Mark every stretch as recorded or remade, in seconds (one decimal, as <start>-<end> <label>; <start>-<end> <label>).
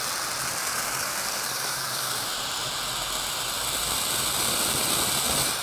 0.0-0.6 recorded; 0.6-2.3 remade; 2.3-5.6 recorded